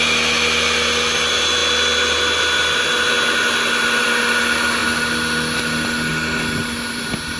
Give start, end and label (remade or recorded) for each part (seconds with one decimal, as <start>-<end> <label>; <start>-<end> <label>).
0.0-7.4 recorded